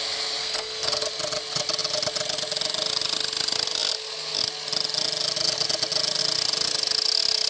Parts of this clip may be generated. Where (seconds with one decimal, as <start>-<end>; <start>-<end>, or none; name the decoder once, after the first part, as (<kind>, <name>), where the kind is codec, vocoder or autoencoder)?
0.4-1.1 (codec, SNAC)